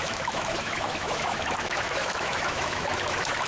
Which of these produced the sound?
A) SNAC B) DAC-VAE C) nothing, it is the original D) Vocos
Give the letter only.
B